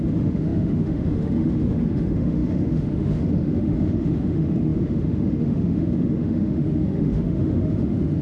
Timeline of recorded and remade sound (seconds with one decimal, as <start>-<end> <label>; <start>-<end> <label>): 0.0-8.2 remade